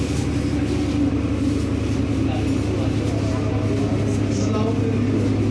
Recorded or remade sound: recorded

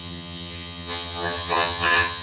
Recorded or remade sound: remade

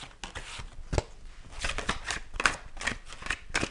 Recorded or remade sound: recorded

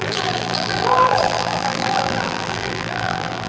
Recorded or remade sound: remade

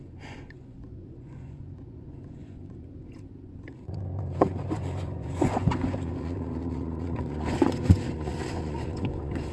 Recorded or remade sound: remade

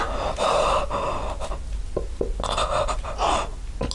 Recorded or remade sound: recorded